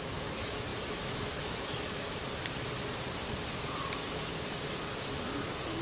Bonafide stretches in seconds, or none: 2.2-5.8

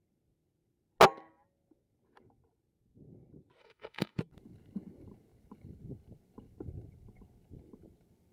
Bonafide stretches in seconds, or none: 0.0-3.6; 4.2-8.3

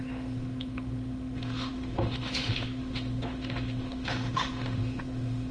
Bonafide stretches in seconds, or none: none